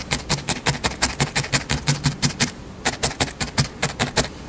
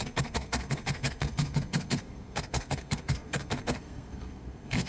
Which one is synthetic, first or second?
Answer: second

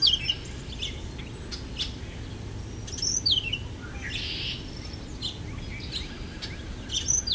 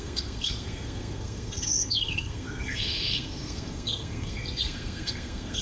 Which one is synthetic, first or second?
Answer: second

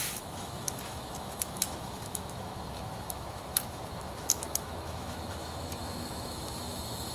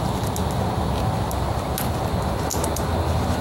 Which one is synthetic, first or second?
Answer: first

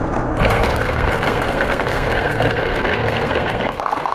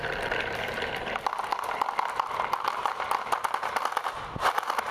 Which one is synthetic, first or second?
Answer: first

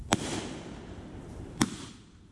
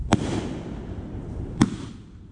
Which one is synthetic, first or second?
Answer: first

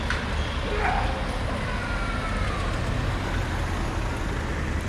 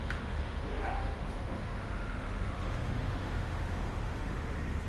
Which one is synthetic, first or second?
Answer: second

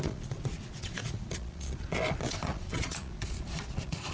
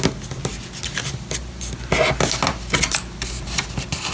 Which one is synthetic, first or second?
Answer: first